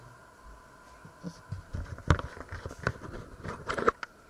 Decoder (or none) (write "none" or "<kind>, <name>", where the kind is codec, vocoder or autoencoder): none